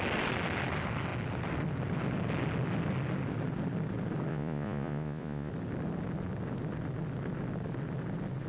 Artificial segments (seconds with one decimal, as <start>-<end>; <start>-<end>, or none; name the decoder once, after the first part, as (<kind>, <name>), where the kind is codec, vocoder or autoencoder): 4.3-5.5 (vocoder, Vocos)